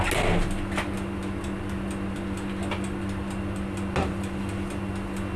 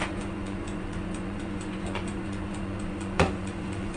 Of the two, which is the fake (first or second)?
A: second